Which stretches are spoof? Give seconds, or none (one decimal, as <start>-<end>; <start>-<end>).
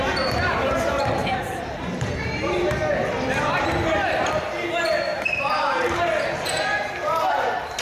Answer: 1.2-4.2; 5.1-6.0